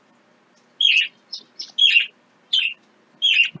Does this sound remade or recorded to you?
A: recorded